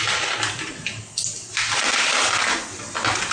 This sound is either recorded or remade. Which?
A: recorded